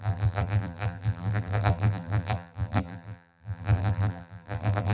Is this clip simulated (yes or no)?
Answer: yes